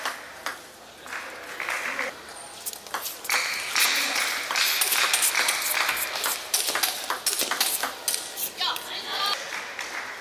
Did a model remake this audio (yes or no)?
no